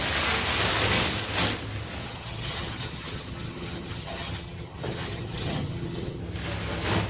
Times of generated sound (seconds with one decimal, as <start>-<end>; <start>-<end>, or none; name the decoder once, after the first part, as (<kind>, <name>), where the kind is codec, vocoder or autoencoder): 2.0-6.2 (vocoder, HiFi-GAN)